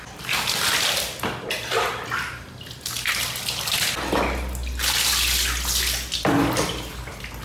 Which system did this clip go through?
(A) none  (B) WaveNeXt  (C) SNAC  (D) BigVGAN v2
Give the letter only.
A